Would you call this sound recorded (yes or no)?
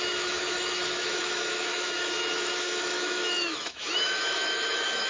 no